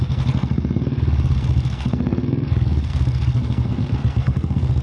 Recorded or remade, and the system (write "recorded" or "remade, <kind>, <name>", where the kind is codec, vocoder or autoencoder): remade, codec, SNAC